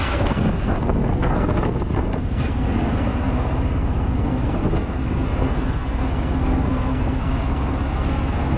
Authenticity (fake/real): fake